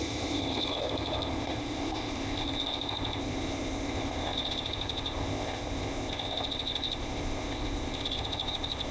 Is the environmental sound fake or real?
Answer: fake